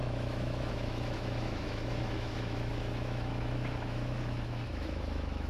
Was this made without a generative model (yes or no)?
no